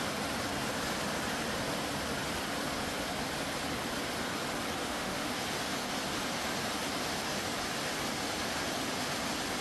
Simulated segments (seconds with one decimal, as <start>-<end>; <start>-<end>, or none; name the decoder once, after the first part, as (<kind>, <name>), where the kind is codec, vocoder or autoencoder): 4.8-5.3 (autoencoder, DAC-VAE)